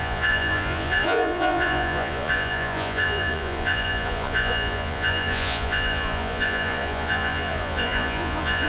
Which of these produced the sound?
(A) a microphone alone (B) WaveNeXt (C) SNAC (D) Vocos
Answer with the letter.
D